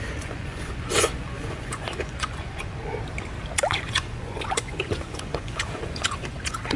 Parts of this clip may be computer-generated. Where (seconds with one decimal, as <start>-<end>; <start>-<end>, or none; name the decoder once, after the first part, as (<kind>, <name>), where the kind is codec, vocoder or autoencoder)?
0.0-2.9 (vocoder, Vocos); 3.7-6.8